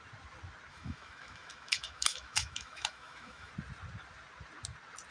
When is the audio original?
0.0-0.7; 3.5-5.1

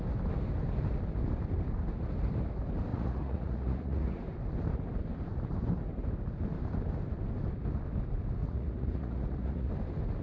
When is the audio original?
0.0-2.9; 4.2-8.4; 9.7-10.2

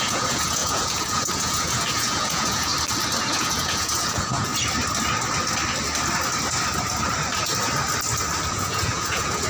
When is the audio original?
2.7-3.3; 4.5-8.5